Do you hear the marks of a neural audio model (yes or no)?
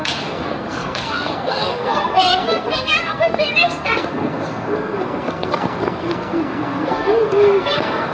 yes